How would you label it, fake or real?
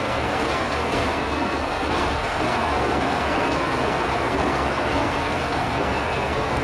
fake